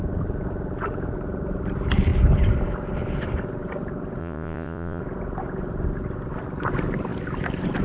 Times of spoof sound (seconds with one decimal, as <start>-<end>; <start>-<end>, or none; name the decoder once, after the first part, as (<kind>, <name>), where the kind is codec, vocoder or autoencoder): 4.2-5.0 (vocoder, Vocos)